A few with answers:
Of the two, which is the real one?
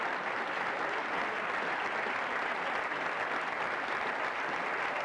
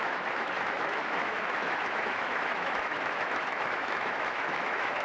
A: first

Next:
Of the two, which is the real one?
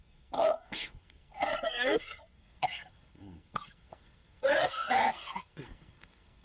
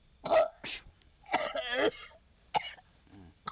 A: second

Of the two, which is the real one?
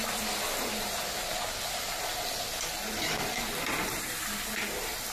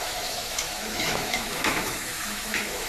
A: first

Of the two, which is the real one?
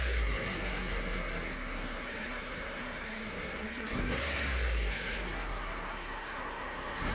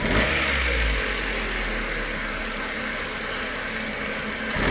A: second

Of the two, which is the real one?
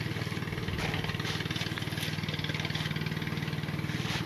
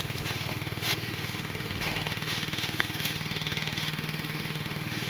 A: first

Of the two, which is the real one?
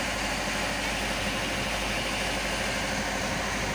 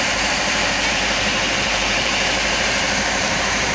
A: first